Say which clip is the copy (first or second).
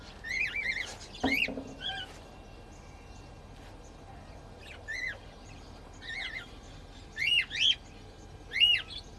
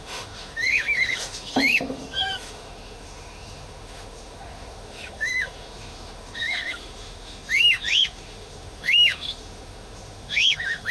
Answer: second